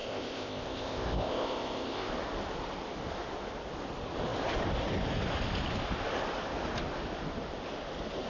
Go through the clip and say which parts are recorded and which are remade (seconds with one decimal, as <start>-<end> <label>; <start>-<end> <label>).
0.0-2.1 remade; 2.1-8.3 recorded